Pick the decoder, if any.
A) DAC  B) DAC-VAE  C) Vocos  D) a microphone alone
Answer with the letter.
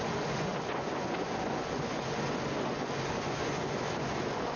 C